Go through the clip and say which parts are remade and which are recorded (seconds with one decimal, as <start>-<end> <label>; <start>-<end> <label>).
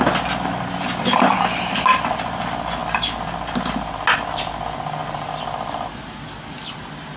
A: 0.0-7.2 recorded